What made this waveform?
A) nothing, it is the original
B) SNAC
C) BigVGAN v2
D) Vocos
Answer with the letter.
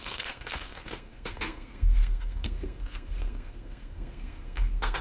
B